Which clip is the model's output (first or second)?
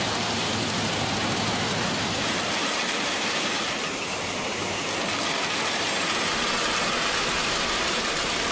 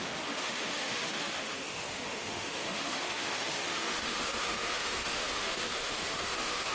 second